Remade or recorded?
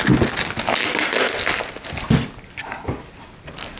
recorded